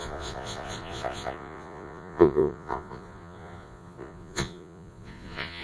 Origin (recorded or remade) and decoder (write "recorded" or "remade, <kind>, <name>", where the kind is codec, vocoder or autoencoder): remade, vocoder, Vocos